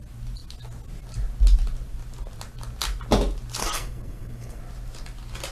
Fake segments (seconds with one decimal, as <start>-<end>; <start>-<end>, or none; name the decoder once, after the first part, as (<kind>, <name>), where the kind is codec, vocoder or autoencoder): 3.6-4.6 (codec, SNAC)